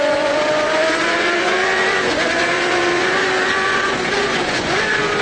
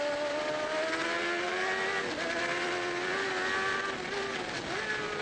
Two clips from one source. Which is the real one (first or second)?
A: second